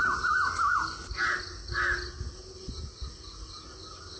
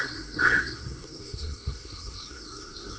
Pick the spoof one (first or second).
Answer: second